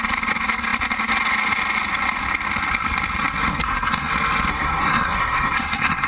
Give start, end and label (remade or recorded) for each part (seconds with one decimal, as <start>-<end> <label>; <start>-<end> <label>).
0.0-3.5 recorded; 3.5-4.1 remade; 4.1-4.5 recorded; 4.5-6.1 remade